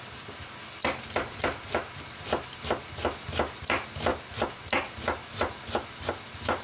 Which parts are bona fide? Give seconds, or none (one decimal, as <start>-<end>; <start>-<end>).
0.0-6.6

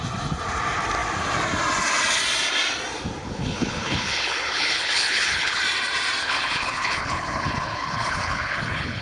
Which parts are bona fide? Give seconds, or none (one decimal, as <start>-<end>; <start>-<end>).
0.0-3.2; 5.6-6.2

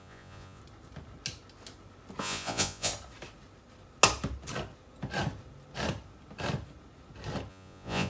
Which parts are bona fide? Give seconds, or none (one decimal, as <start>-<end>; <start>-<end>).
0.6-2.2; 2.9-7.5

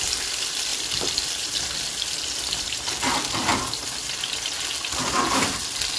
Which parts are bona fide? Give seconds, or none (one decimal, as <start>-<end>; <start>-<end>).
0.0-0.7; 2.9-3.5; 4.3-6.0

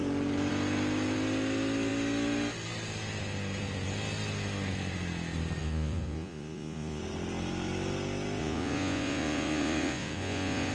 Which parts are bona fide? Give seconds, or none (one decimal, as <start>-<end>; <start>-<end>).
0.0-5.6; 7.0-8.4